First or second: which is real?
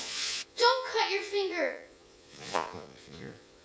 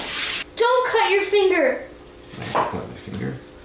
second